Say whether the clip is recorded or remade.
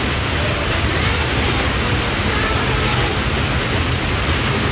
recorded